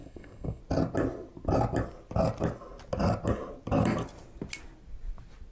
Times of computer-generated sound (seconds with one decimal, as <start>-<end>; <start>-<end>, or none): 0.0-0.6